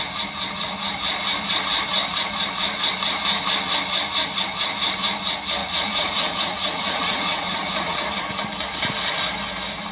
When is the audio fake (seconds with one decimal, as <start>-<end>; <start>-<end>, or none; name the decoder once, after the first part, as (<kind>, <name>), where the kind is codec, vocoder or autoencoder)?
5.6-8.1 (vocoder, Vocos)